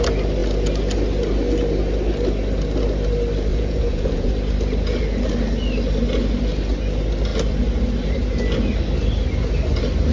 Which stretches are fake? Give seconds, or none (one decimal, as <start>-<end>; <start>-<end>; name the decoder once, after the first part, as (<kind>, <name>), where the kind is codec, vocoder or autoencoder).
3.5-4.3 (vocoder, Vocos)